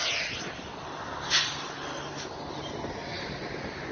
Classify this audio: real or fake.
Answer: real